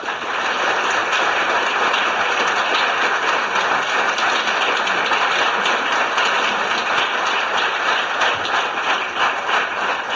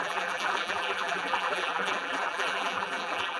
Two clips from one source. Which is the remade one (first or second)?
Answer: second